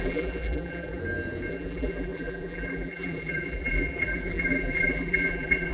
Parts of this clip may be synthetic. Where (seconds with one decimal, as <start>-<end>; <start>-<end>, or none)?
0.0-1.0; 1.5-5.7